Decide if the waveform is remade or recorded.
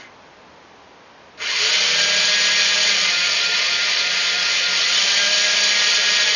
recorded